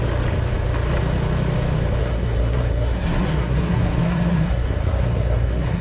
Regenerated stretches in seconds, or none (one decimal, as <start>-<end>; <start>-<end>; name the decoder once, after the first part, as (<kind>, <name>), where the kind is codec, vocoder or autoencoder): 2.0-5.8 (codec, SNAC)

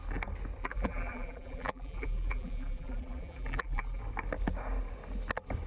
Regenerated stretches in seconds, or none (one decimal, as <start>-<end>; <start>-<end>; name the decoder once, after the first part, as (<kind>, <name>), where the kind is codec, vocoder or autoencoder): 0.6-4.0 (vocoder, BigVGAN v2)